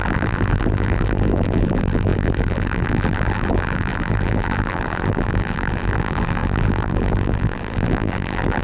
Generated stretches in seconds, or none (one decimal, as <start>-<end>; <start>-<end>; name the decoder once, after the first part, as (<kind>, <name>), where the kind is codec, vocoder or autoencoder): 0.0-8.6 (vocoder, BigVGAN v2)